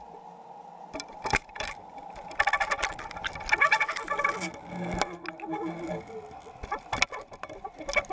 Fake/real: real